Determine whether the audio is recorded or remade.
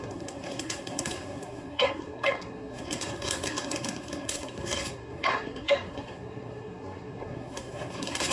remade